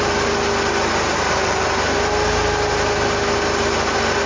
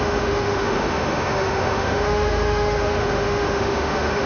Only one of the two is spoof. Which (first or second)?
second